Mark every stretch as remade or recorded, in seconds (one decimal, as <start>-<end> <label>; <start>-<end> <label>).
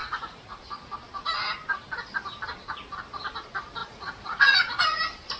0.0-0.6 remade; 0.6-3.8 recorded; 3.8-5.0 remade; 5.0-5.4 recorded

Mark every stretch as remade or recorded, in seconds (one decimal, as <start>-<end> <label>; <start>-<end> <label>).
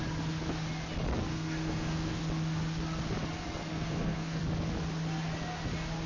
0.0-1.3 recorded; 1.3-2.2 remade; 2.2-3.7 recorded; 3.7-4.4 remade; 4.4-6.1 recorded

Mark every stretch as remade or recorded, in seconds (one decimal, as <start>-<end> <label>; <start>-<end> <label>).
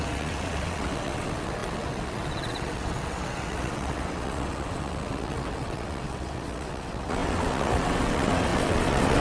0.0-9.2 remade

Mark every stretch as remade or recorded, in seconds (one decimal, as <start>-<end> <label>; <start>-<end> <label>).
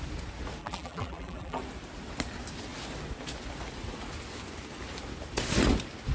0.0-0.6 recorded; 0.6-1.6 remade; 1.6-6.1 recorded